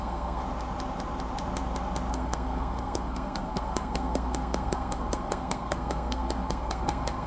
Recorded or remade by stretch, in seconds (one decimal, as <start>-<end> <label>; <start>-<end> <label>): 0.0-0.4 remade; 0.4-2.1 recorded; 2.1-7.3 remade